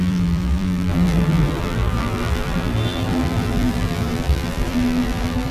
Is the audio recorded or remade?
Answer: remade